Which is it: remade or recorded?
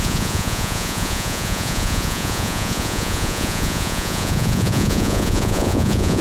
remade